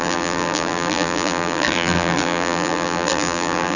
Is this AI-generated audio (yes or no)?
yes